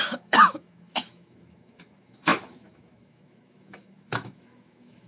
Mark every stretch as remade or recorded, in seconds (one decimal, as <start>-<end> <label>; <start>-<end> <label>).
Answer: 0.0-5.1 remade